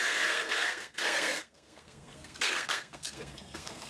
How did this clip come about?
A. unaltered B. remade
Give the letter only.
B